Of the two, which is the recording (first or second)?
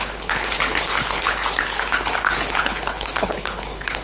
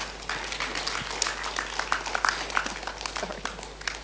second